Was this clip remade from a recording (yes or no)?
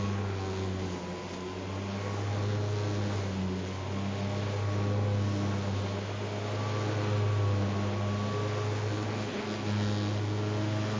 no